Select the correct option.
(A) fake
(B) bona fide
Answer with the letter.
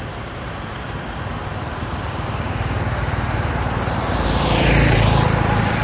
A